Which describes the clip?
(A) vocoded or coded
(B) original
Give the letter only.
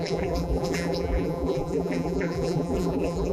A